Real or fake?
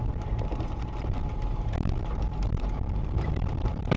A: fake